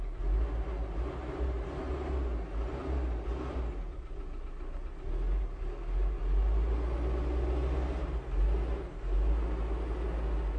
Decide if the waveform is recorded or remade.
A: recorded